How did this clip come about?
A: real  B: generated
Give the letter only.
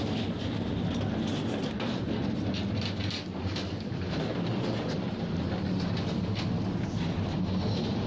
A